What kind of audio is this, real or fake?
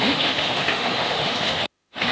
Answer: fake